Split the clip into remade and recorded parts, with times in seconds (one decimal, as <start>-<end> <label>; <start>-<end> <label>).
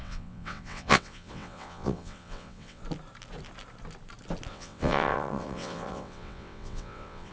0.0-2.8 remade; 2.8-4.5 recorded; 4.5-7.3 remade